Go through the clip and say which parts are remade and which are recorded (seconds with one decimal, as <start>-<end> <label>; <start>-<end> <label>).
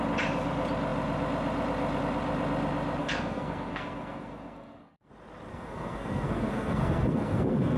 0.0-3.0 recorded; 3.0-5.1 remade; 5.1-5.5 recorded; 5.5-7.8 remade